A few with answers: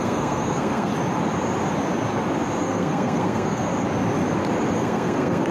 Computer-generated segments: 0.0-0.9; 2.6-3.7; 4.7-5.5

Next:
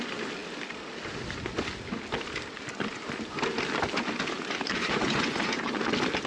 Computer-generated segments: 4.7-5.8

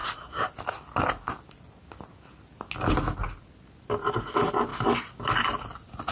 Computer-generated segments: none

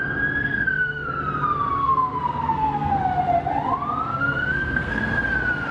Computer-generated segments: 0.4-1.2; 1.8-3.0; 4.1-5.0